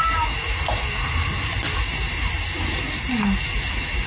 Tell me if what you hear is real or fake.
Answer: real